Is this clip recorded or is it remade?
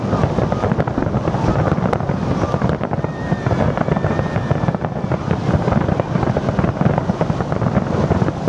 recorded